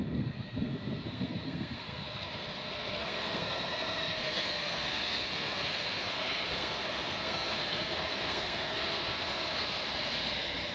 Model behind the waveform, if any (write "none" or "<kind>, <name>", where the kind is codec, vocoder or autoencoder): codec, SNAC